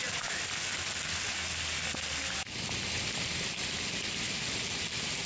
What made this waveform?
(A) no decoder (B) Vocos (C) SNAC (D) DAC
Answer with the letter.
A